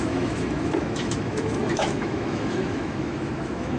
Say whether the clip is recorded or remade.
remade